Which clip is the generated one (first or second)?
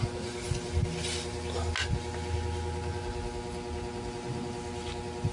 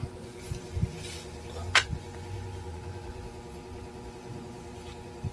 second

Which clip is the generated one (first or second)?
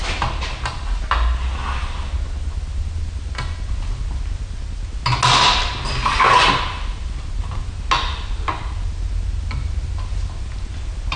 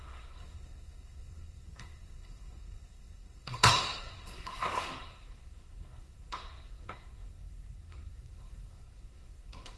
second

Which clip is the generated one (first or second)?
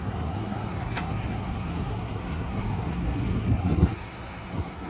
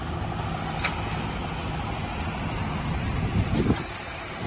first